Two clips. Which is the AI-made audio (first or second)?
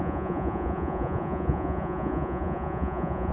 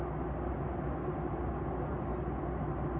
first